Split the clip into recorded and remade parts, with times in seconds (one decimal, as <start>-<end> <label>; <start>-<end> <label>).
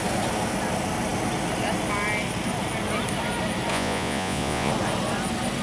0.0-3.7 recorded; 3.7-4.7 remade; 4.7-5.6 recorded